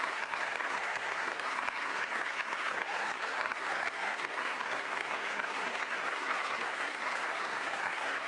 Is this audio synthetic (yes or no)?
yes